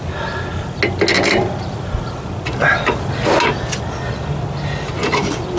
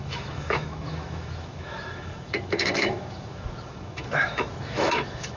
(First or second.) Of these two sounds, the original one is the first